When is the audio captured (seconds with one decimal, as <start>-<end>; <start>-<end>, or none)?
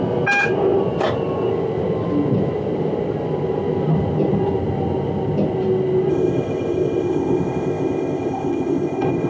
0.0-6.1